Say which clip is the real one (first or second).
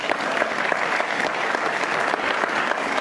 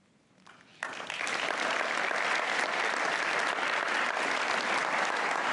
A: second